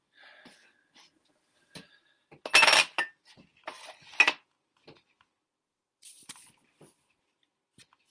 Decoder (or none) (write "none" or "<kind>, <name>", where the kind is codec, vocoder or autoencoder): none